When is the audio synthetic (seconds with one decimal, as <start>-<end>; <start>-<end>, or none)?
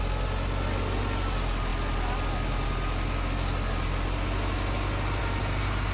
none